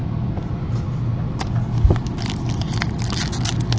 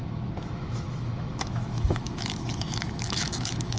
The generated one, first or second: second